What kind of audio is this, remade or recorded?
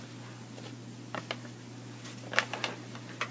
recorded